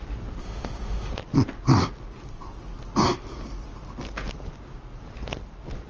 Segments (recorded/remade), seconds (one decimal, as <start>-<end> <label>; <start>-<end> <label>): 0.0-0.4 recorded; 0.4-1.1 remade; 1.1-5.9 recorded